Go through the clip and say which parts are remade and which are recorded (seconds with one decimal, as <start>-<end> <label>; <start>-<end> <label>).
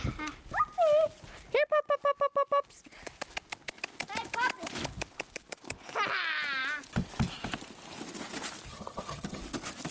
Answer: 0.0-8.7 recorded; 8.7-9.4 remade; 9.4-9.9 recorded